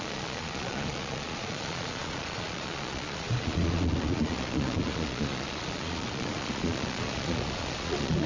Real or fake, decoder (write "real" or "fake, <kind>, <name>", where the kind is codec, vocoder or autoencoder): fake, vocoder, Vocos